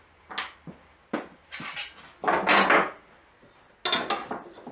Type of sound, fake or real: real